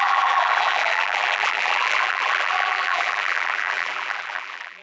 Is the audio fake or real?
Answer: fake